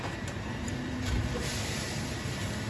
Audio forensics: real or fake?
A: fake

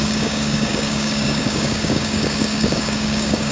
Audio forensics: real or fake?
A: fake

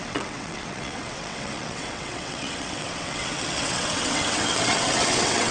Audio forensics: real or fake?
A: fake